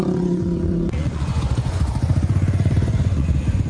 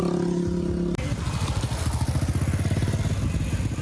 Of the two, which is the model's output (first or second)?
first